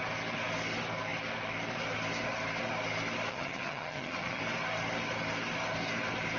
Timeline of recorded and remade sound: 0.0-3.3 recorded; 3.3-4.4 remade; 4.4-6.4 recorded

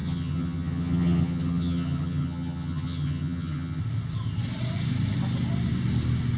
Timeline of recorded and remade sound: 0.0-3.8 remade; 3.8-6.4 recorded

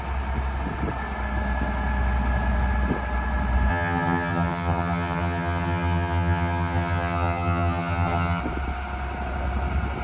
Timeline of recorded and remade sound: 0.0-3.7 recorded; 3.7-8.4 remade; 8.4-10.0 recorded

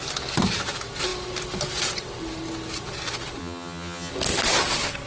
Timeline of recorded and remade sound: 0.0-3.4 recorded; 3.4-4.1 remade; 4.1-5.1 recorded

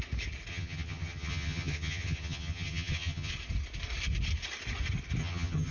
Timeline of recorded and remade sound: 0.0-0.5 recorded; 0.5-3.3 remade; 3.3-5.2 recorded; 5.2-5.7 remade